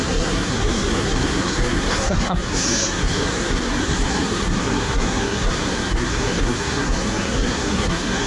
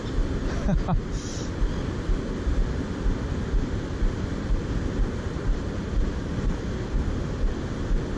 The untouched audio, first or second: second